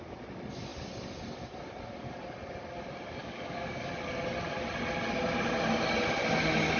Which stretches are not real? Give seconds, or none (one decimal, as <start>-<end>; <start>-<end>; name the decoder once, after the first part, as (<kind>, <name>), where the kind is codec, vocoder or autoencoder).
3.2-3.9 (codec, DAC)

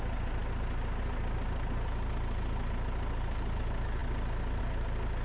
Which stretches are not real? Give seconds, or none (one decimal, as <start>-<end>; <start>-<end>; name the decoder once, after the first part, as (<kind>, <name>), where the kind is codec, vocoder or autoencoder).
none